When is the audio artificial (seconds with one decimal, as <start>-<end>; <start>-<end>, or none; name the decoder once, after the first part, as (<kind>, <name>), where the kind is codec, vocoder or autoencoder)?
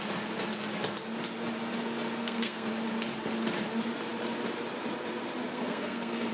2.2-2.7 (codec, SNAC); 5.5-6.3